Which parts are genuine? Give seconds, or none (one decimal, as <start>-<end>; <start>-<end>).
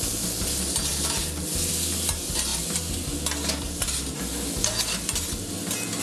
0.0-6.0